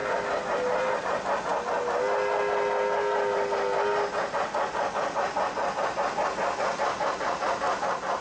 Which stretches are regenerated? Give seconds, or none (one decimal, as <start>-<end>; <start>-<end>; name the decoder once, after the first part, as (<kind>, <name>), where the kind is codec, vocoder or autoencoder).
none

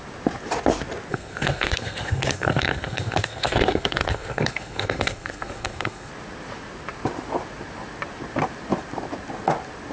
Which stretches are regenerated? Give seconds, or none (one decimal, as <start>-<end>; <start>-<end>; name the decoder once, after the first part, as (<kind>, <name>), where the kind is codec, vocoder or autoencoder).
1.1-6.1 (codec, SNAC)

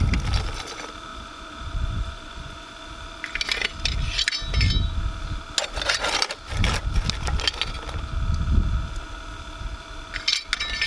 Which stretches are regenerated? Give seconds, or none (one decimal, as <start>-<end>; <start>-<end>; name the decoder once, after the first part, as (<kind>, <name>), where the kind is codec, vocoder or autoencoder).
1.1-2.9 (vocoder, Vocos)

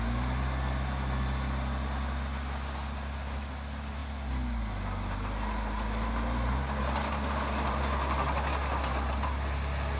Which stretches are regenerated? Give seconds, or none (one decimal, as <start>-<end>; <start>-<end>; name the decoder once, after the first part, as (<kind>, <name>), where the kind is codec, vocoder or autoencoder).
none